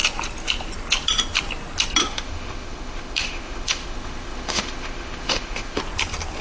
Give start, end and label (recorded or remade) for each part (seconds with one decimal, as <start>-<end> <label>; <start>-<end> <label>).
0.0-2.0 recorded; 2.0-5.8 remade; 5.8-6.4 recorded